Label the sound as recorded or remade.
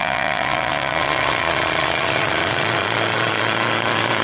remade